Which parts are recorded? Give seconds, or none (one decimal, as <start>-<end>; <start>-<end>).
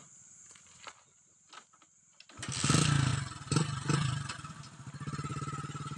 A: 0.0-3.1; 4.6-6.0